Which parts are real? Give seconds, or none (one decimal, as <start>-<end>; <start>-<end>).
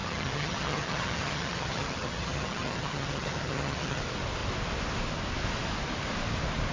4.0-6.7